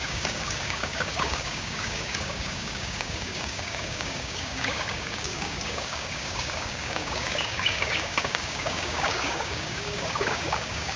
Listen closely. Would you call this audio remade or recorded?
remade